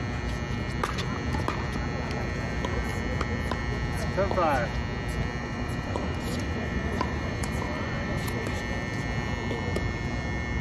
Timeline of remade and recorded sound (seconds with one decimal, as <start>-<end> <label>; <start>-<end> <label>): 0.0-5.4 recorded; 5.4-8.6 remade; 8.6-10.6 recorded